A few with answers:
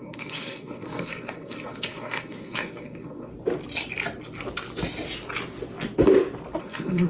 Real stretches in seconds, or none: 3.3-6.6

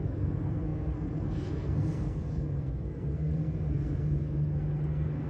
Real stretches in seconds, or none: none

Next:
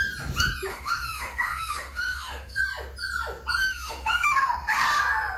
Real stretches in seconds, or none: 0.0-0.7; 2.6-3.6; 5.0-5.4